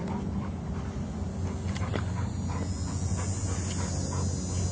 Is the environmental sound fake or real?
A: real